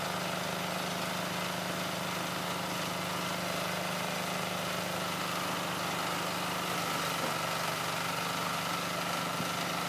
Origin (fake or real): real